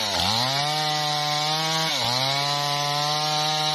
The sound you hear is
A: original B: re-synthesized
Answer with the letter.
A